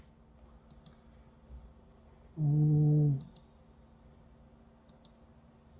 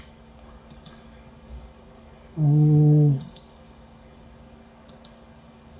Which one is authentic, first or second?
first